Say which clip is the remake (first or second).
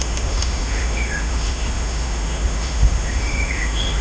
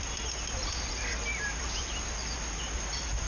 first